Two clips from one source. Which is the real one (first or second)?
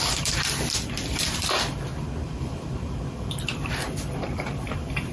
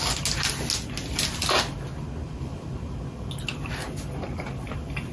second